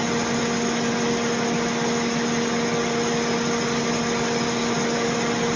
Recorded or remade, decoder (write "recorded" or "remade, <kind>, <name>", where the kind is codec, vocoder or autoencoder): recorded